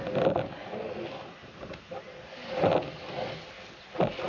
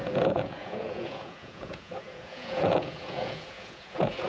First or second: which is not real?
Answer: second